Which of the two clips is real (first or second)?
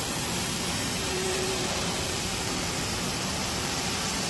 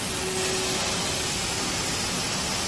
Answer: second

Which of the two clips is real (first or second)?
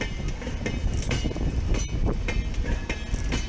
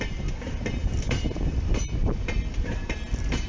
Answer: first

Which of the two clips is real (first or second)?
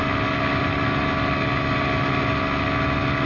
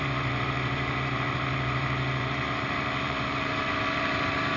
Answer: first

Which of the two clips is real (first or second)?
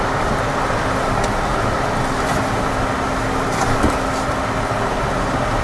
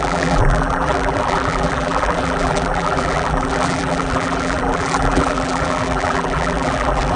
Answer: first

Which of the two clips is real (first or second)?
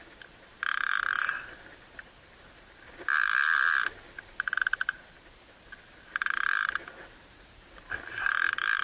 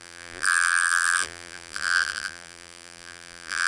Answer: first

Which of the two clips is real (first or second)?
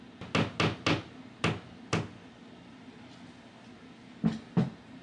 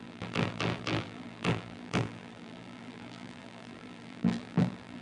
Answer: first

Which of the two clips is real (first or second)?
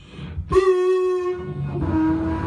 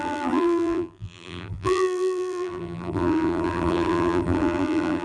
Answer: first